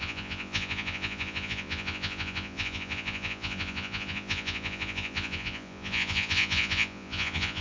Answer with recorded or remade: remade